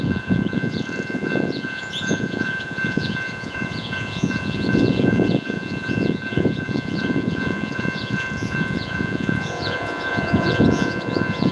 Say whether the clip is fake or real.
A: fake